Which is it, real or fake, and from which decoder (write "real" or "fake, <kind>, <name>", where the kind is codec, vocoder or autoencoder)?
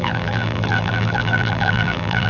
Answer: fake, vocoder, BigVGAN v2